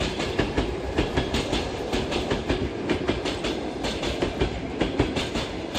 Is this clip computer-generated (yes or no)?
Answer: yes